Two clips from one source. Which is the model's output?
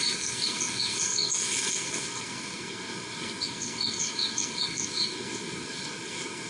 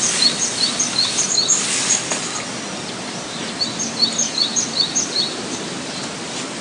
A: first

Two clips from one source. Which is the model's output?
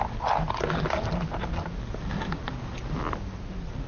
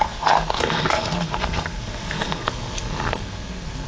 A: second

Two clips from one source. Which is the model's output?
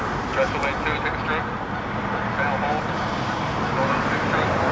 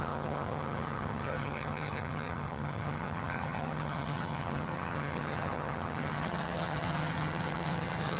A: second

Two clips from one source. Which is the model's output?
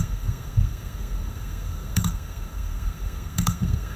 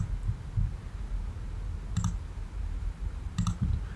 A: first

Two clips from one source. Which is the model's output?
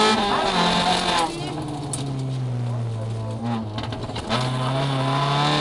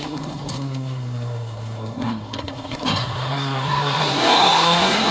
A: second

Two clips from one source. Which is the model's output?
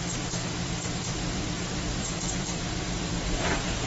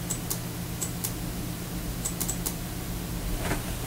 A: first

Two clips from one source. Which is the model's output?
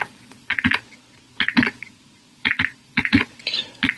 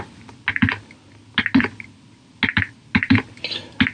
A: first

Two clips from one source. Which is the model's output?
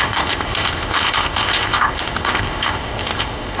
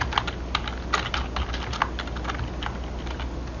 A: first